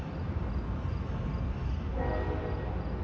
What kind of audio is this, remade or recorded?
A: recorded